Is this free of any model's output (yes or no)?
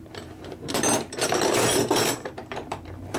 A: no